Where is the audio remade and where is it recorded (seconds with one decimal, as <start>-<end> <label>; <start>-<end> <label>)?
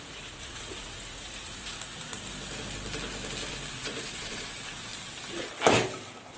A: 0.0-2.1 remade; 2.1-3.7 recorded; 3.7-4.9 remade; 4.9-6.4 recorded